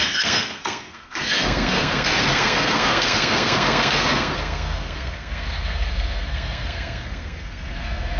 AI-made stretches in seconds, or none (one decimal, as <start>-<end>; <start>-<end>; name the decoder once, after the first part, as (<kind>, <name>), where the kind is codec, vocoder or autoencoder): 0.0-8.2 (codec, SNAC)

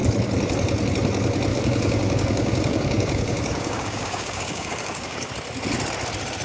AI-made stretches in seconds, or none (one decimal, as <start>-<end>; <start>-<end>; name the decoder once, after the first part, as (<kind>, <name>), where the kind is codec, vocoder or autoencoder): 1.5-5.3 (codec, DAC)